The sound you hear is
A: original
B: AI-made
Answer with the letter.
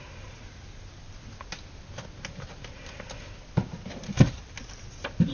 A